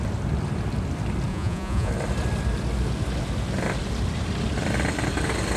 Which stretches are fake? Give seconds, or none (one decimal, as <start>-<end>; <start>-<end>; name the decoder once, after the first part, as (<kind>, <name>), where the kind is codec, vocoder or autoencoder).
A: 1.3-1.9 (vocoder, Vocos)